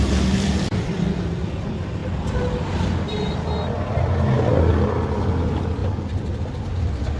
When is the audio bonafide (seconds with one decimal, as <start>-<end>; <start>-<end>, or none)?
0.0-7.2